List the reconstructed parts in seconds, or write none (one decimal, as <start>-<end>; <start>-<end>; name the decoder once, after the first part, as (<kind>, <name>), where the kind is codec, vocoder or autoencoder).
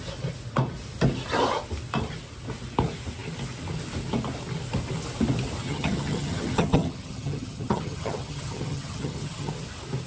5.6-9.5 (vocoder, HiFi-GAN)